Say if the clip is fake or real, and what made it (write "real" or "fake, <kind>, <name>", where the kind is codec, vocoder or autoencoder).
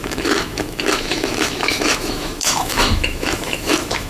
fake, autoencoder, DAC-VAE